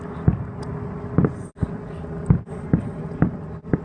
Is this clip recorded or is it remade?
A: recorded